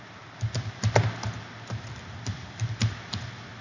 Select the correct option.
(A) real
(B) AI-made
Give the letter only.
A